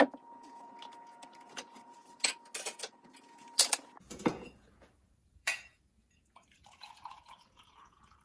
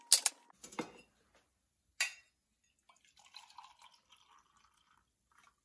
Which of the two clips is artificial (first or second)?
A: first